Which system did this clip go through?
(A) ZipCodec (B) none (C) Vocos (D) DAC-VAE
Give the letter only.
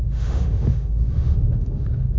D